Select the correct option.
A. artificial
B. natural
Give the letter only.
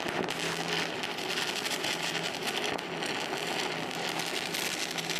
B